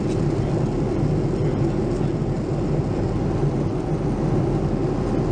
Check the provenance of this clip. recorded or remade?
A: recorded